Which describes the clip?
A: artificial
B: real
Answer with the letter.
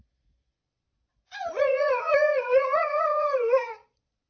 A